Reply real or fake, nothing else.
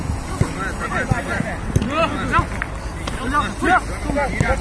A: real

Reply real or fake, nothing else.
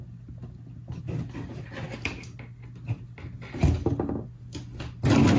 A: real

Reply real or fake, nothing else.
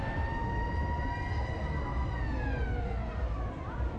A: real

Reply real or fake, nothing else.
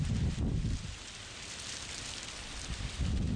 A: real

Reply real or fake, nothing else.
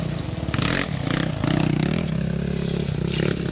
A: real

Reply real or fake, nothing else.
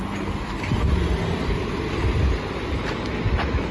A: real